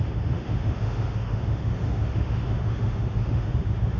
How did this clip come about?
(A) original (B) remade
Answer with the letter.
B